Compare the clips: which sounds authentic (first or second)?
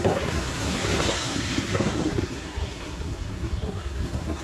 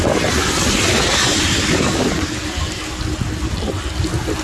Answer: second